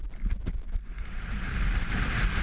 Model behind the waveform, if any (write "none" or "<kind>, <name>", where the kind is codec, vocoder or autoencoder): vocoder, BigVGAN v2